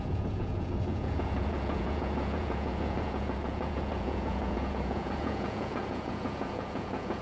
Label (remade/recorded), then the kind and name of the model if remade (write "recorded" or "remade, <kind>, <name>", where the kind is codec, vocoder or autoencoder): remade, vocoder, Vocos